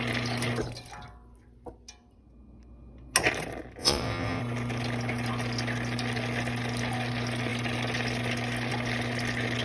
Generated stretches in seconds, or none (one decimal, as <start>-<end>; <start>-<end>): 3.8-4.4